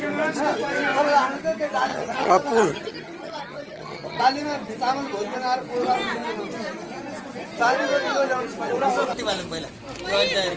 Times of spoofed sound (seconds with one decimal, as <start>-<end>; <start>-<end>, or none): 1.9-4.2